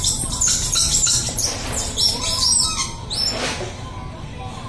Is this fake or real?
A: real